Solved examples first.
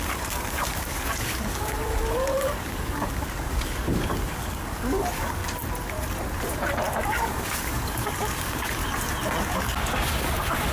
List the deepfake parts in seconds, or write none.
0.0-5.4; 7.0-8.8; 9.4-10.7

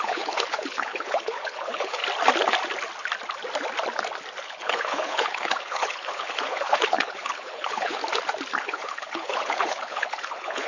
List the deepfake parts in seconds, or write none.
0.0-2.0; 4.4-8.0; 8.6-10.7

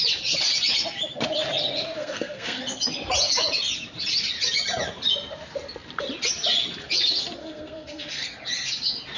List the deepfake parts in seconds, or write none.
2.0-2.6; 7.4-8.3

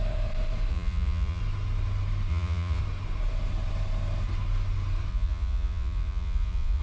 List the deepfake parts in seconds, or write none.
0.7-1.4; 2.3-2.8; 5.1-6.8

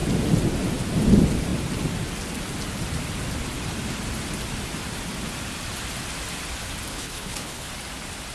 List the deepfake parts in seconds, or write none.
6.9-7.7

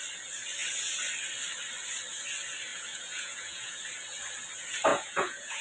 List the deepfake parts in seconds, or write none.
2.7-3.8; 4.9-5.6